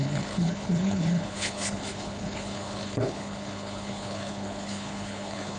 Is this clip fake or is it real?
fake